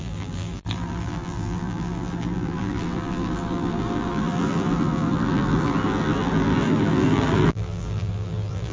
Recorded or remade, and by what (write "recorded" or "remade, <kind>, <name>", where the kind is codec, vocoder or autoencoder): remade, vocoder, BigVGAN v2